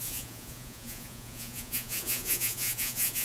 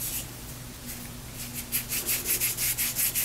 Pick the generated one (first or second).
first